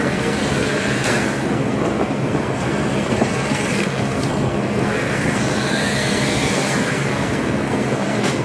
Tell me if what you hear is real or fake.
fake